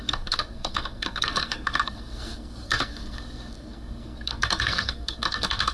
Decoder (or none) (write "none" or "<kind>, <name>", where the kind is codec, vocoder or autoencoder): codec, SNAC